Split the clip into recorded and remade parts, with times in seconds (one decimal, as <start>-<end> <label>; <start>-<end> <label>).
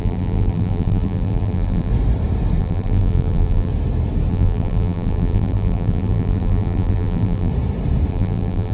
0.0-1.9 remade; 1.9-2.6 recorded; 2.6-3.7 remade; 3.7-4.3 recorded; 4.3-7.5 remade; 7.5-8.1 recorded; 8.1-8.7 remade